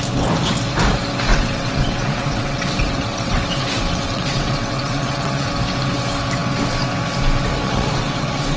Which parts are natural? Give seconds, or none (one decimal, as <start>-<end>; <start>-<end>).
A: 0.0-1.3; 5.5-7.6